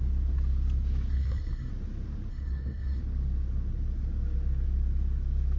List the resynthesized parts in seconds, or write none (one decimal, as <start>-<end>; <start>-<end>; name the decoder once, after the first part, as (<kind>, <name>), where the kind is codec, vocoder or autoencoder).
1.1-1.7 (codec, SNAC); 2.3-3.0